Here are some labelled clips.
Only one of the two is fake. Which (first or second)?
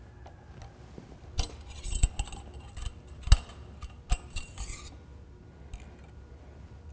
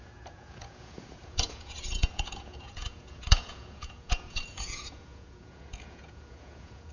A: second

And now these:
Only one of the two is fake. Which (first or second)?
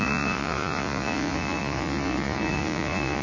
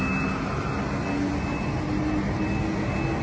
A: first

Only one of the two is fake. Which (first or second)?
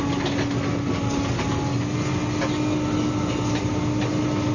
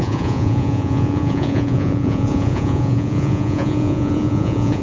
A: second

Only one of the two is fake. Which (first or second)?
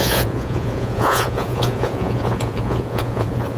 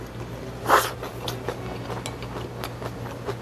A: first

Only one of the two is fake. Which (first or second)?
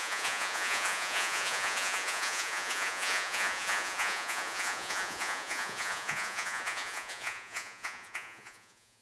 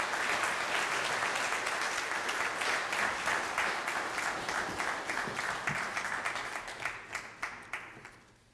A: first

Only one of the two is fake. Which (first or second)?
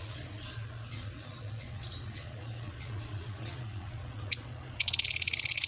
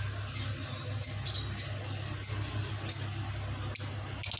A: first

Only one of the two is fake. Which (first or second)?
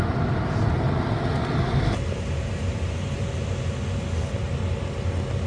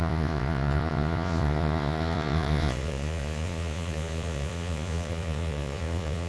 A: second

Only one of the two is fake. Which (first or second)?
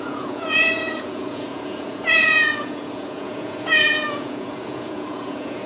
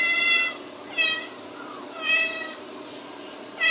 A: first